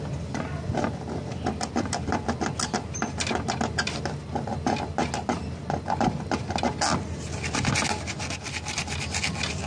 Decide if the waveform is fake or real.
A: real